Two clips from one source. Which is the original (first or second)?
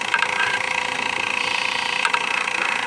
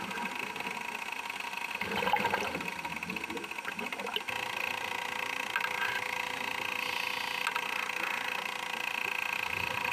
second